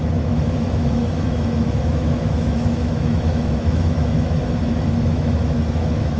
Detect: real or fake fake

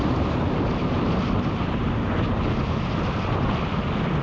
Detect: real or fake real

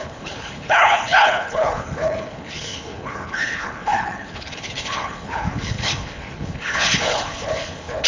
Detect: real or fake fake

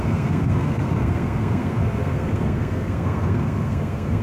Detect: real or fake fake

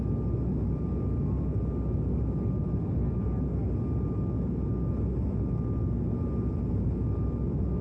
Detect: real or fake real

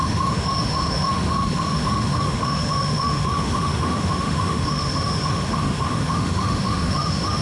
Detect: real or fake fake